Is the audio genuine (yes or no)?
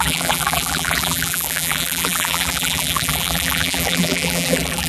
no